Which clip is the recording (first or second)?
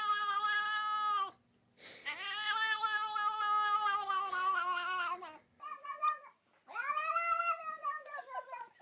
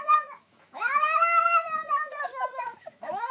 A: first